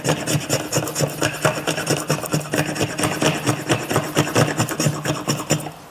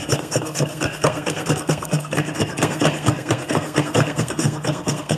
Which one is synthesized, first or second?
second